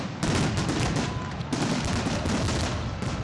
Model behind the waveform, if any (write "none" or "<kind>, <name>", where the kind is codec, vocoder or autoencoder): none